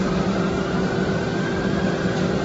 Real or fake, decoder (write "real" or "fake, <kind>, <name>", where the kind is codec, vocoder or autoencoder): real